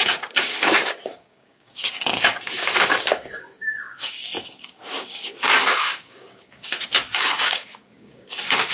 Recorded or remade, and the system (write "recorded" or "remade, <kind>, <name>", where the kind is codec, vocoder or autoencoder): remade, codec, DAC